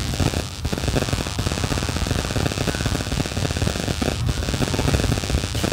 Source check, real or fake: fake